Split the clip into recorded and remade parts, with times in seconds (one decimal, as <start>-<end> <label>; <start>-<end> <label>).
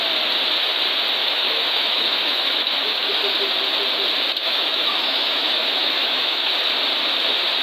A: 0.0-1.2 recorded; 1.2-3.1 remade; 3.1-4.4 recorded; 4.4-6.5 remade; 6.5-7.6 recorded